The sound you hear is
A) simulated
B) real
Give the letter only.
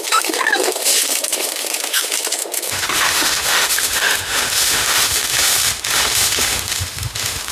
A